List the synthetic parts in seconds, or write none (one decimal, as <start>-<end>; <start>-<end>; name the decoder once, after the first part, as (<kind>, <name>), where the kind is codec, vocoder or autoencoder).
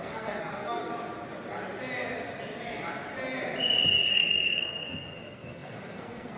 0.0-0.9 (codec, SNAC); 4.1-6.4